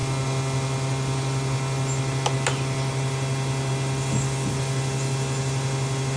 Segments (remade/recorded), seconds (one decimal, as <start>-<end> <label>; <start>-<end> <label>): 0.0-6.2 recorded